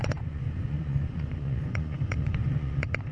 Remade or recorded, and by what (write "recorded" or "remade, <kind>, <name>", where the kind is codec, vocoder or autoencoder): remade, vocoder, Vocos